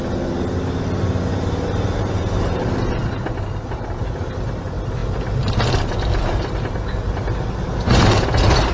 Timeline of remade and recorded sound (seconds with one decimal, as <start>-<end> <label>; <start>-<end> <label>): 0.0-8.7 recorded